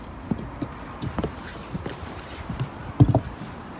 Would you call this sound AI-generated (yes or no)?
yes